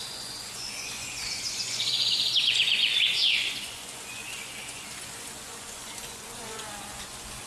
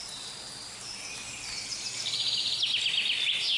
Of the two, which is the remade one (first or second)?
first